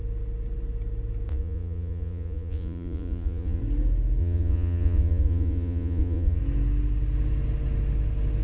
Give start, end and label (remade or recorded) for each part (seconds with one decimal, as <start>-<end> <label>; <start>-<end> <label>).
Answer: 0.0-1.3 recorded; 1.3-3.6 remade; 3.6-4.2 recorded; 4.2-6.4 remade; 6.4-8.4 recorded